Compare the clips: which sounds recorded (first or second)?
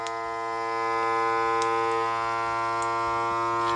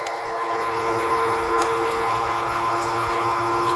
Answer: first